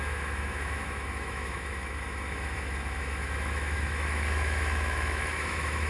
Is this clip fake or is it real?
fake